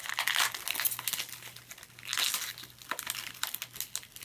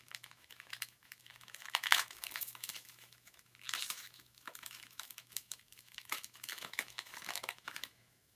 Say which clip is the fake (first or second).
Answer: second